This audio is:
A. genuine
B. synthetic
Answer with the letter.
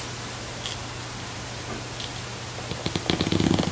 A